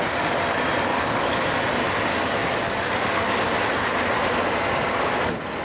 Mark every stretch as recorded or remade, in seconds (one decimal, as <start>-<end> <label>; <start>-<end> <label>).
0.0-0.9 recorded; 0.9-1.4 remade; 1.4-2.1 recorded; 2.1-3.2 remade; 3.2-5.6 recorded